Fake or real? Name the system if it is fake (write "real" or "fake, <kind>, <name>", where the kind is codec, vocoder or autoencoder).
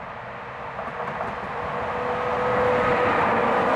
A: real